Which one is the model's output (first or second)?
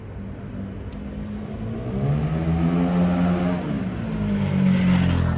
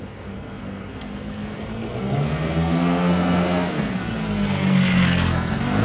second